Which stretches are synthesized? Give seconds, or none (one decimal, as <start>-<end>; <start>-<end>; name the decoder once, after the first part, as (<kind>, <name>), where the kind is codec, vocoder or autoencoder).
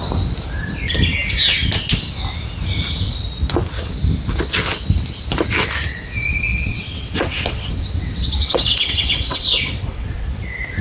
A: 6.5-10.4 (vocoder, WaveNeXt)